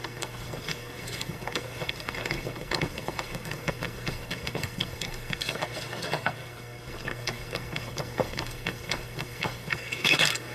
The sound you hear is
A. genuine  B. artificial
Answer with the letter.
B